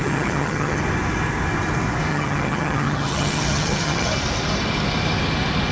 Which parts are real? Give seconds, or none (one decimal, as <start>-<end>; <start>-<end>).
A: 0.8-2.1; 4.1-5.7